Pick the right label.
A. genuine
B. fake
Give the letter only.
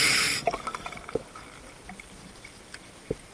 A